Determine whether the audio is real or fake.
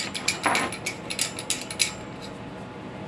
real